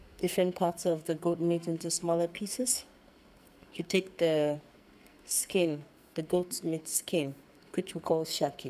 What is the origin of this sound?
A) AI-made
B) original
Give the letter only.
A